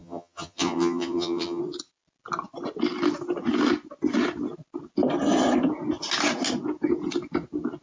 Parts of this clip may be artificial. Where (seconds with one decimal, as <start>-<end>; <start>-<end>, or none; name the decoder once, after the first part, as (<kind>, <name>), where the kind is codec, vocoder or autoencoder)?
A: 0.0-1.6 (vocoder, HiFi-GAN)